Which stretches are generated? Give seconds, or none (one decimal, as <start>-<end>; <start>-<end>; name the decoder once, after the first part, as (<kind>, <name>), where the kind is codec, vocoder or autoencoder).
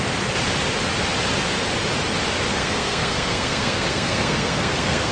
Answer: 2.5-5.1 (codec, SNAC)